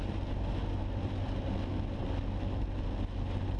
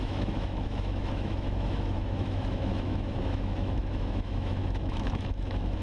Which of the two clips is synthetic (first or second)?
second